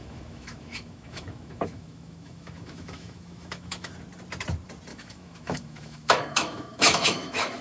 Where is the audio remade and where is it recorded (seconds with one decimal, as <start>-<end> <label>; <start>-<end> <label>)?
0.0-3.9 remade; 3.9-4.9 recorded; 4.9-7.6 remade